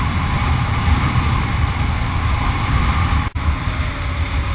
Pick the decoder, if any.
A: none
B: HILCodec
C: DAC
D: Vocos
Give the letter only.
A